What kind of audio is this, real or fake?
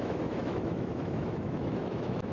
fake